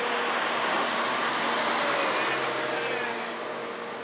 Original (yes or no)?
yes